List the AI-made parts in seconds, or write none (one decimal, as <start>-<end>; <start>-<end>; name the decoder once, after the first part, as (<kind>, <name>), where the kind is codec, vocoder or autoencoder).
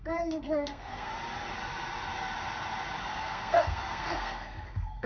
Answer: 0.0-1.1 (codec, SNAC); 3.0-5.1